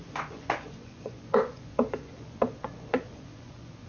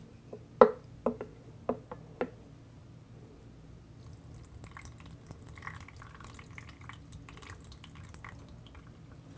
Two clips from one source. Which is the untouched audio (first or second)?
second